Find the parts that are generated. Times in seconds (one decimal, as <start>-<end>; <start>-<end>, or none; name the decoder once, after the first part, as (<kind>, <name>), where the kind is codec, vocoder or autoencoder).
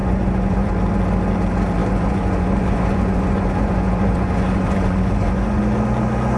0.0-0.7 (vocoder, Vocos); 1.8-5.6